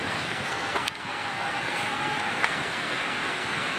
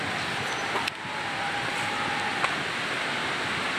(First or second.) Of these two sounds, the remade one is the first